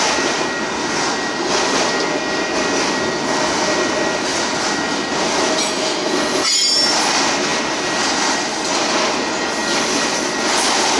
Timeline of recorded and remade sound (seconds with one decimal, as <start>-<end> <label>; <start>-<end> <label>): 0.0-9.6 recorded; 9.6-11.0 remade